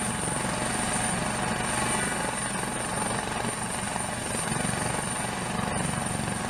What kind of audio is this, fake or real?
real